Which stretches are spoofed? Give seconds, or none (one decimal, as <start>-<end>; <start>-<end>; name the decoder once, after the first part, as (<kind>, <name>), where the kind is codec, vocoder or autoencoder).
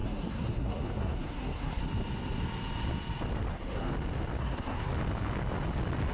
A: 0.0-1.8 (codec, SNAC); 3.5-3.9; 4.4-4.9